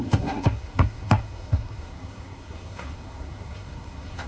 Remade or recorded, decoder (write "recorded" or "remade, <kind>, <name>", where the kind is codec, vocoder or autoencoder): remade, codec, SNAC